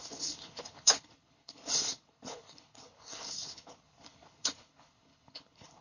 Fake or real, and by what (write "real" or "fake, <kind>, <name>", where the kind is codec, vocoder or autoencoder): fake, codec, HILCodec